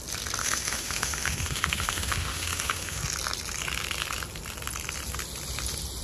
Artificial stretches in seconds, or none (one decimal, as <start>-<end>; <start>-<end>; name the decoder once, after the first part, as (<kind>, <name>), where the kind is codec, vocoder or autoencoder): 0.4-3.0 (autoencoder, DAC-VAE)